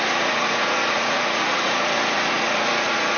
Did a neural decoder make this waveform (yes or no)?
yes